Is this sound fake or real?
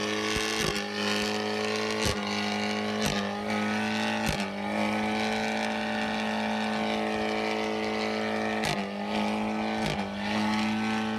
real